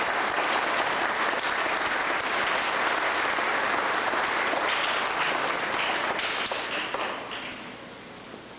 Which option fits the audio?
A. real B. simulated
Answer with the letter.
A